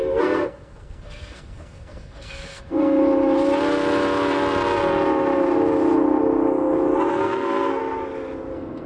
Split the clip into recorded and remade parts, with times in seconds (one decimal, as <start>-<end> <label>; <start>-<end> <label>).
0.0-3.0 remade; 3.0-7.1 recorded; 7.1-7.8 remade; 7.8-8.5 recorded; 8.5-8.9 remade